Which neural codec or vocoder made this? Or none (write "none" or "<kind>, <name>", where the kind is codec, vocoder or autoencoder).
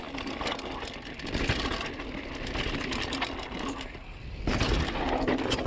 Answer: none